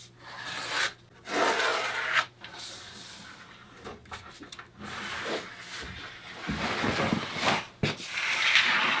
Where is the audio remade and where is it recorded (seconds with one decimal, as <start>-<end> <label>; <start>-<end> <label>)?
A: 0.0-9.0 recorded